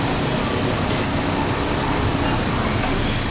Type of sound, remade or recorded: recorded